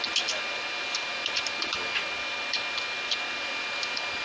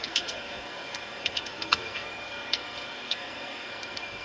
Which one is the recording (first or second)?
first